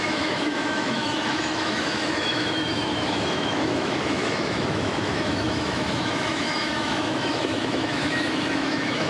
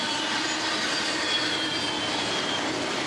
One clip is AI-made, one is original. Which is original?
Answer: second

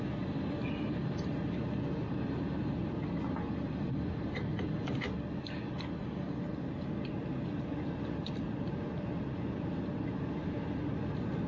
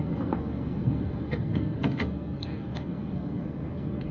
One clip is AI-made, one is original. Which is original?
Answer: first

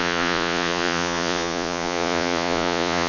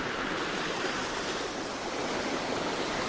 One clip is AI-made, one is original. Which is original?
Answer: second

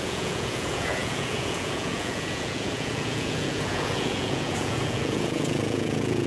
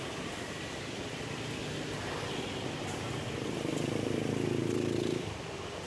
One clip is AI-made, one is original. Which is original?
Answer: second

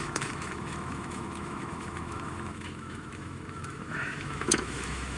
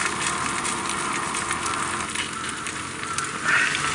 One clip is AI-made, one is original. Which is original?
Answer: second